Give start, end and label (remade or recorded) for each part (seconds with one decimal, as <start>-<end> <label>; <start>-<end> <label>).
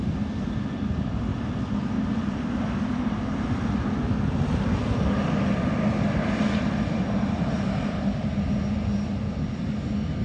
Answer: 0.0-10.2 recorded